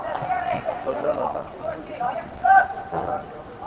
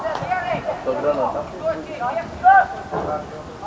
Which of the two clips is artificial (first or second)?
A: first